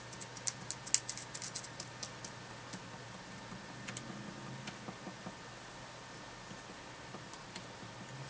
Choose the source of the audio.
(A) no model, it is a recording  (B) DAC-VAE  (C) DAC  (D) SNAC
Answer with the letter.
A